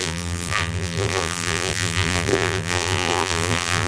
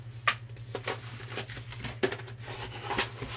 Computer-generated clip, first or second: first